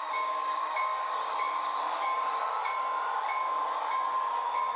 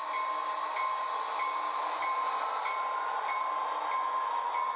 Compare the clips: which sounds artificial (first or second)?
first